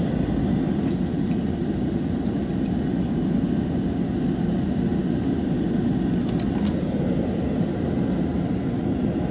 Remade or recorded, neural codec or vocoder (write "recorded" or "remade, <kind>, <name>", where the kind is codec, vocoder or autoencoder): recorded